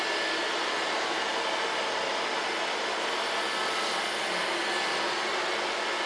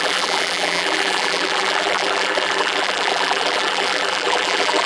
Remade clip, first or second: second